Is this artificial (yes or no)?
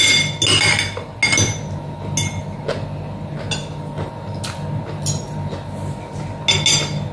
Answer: no